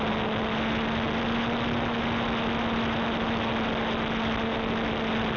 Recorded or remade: recorded